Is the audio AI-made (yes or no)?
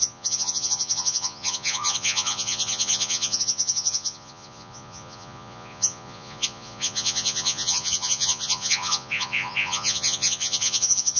yes